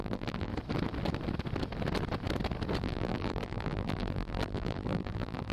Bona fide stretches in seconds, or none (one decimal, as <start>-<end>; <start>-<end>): 0.5-2.8